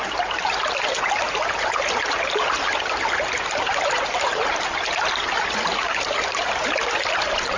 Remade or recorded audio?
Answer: recorded